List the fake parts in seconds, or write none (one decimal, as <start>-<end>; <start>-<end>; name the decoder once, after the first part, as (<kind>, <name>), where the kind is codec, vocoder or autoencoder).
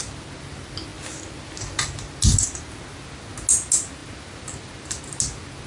none